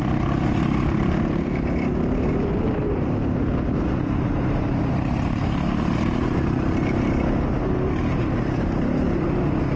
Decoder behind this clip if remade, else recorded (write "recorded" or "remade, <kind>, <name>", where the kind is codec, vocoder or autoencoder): recorded